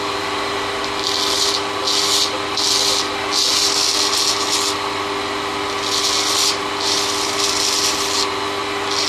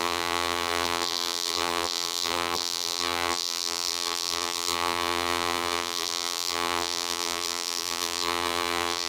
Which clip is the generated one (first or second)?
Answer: second